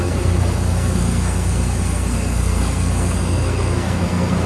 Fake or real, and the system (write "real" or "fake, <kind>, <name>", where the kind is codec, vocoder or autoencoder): fake, codec, SNAC